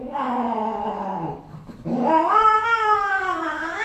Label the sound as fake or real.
fake